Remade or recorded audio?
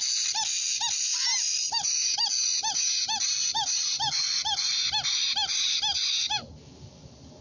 recorded